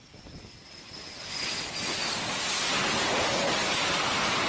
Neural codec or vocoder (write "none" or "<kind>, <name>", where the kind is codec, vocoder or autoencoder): none